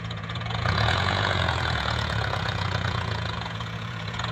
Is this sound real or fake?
fake